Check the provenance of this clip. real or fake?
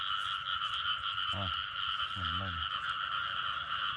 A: real